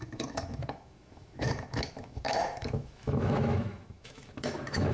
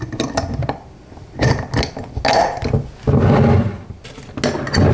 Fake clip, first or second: first